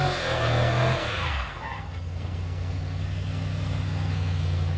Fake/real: fake